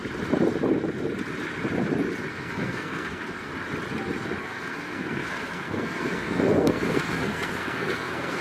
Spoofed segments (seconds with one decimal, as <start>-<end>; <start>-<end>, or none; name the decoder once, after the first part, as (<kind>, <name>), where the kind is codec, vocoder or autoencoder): 2.3-3.5 (codec, SNAC); 4.4-8.4